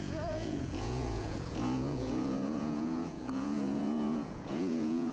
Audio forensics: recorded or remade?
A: remade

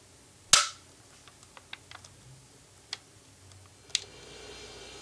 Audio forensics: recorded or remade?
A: recorded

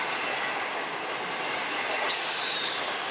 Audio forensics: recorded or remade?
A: recorded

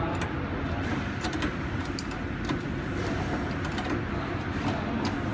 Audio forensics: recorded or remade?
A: recorded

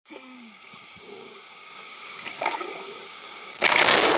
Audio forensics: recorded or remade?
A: remade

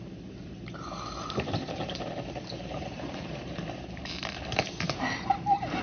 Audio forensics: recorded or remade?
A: remade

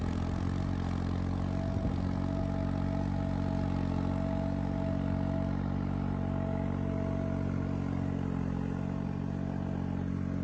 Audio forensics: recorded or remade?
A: recorded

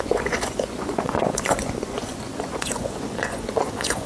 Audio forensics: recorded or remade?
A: remade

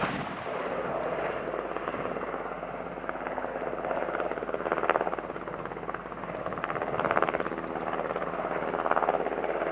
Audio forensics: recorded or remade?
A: recorded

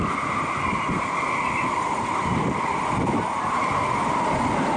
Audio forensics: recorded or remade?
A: recorded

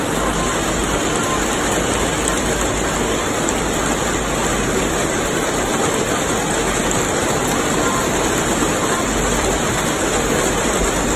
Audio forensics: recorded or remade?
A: recorded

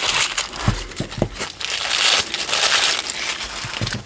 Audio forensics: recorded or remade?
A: recorded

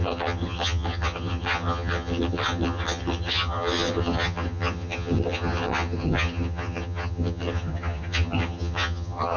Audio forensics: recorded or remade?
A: remade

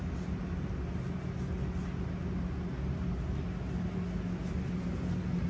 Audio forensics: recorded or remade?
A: recorded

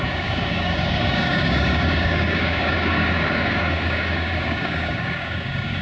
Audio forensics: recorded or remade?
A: remade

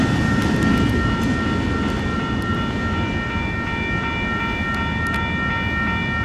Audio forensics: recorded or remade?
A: recorded